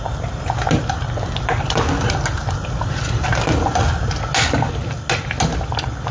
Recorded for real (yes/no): yes